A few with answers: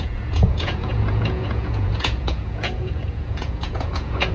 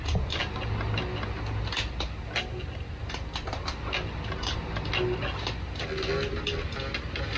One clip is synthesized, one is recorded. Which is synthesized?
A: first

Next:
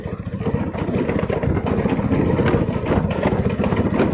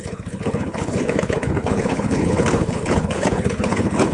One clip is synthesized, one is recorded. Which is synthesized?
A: second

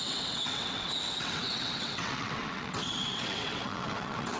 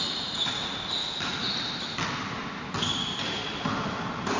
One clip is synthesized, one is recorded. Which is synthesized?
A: first